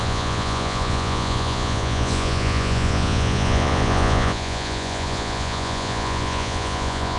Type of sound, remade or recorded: remade